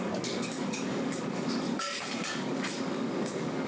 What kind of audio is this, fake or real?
fake